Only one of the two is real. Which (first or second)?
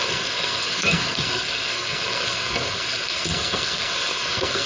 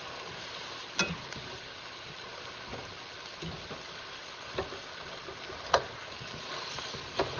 second